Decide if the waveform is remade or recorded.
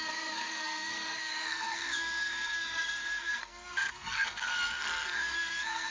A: remade